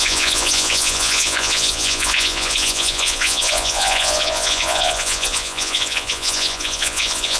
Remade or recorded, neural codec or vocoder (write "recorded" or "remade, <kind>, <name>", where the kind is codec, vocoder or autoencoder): remade, vocoder, Vocos